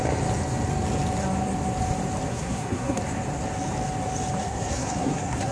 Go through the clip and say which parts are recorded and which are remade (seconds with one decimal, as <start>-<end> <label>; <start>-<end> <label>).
0.0-2.3 recorded; 2.3-3.0 remade; 3.0-4.4 recorded; 4.4-5.5 remade